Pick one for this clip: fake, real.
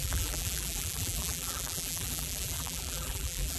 fake